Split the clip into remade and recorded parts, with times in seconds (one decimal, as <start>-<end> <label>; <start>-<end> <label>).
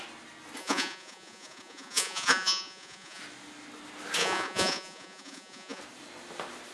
0.0-0.6 recorded; 0.6-3.2 remade; 3.2-4.2 recorded; 4.2-5.8 remade; 5.8-6.7 recorded